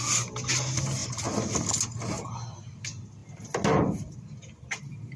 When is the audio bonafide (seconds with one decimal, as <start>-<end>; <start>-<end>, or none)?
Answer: 0.0-5.2